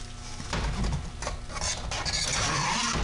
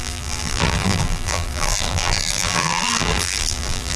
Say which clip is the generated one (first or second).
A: second